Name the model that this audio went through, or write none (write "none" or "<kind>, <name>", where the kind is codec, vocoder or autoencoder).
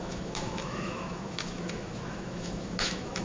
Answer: autoencoder, DAC-VAE